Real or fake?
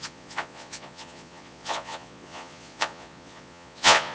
fake